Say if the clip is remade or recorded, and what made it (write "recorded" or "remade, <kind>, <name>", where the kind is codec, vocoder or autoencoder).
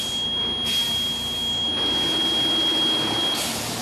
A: recorded